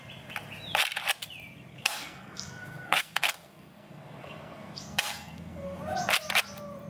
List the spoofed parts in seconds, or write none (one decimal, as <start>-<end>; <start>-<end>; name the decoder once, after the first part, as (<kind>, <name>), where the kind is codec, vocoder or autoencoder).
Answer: 1.7-5.8 (codec, SNAC)